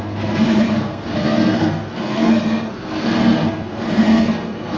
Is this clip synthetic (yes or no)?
yes